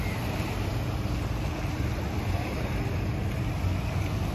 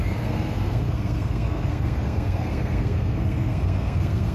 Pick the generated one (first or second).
second